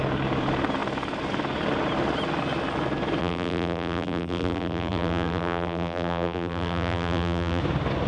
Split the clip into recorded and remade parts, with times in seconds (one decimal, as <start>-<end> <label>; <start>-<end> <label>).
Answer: 0.0-3.2 recorded; 3.2-7.6 remade; 7.6-8.1 recorded

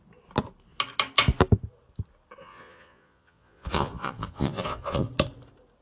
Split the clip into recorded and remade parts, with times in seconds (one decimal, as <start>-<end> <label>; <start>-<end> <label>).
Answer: 0.0-2.4 recorded; 2.4-5.1 remade; 5.1-5.8 recorded

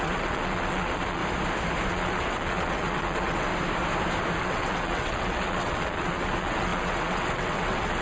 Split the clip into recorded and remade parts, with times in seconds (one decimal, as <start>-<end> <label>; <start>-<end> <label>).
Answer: 0.0-1.2 remade; 1.2-1.9 recorded; 1.9-3.5 remade; 3.5-4.4 recorded; 4.4-8.0 remade

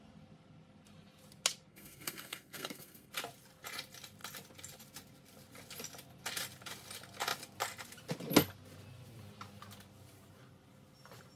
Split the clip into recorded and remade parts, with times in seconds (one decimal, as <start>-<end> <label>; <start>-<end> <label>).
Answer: 0.0-1.7 recorded; 1.7-3.1 remade; 3.1-11.4 recorded

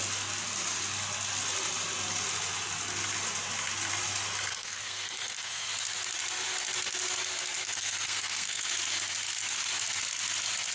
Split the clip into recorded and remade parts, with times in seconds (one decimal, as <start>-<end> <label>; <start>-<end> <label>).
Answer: 0.0-4.5 recorded; 4.5-5.7 remade; 5.7-7.6 recorded; 7.6-8.7 remade; 8.7-10.7 recorded